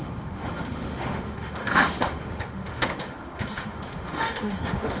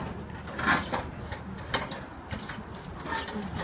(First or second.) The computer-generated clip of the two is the first